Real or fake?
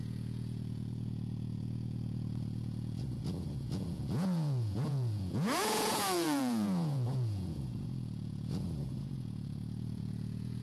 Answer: fake